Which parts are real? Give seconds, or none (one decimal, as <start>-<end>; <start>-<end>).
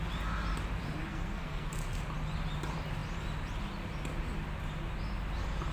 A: 0.0-1.0; 2.0-5.7